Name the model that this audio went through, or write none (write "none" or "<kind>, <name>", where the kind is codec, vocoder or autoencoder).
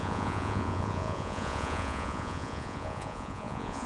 vocoder, Vocos